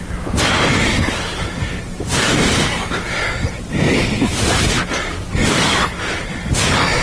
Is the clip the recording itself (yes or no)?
yes